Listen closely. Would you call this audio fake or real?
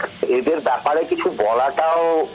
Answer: real